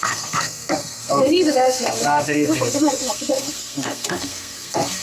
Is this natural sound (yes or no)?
no